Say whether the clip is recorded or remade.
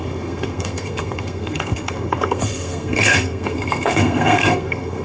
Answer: remade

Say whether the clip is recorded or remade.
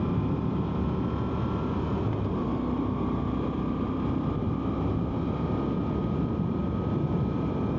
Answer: recorded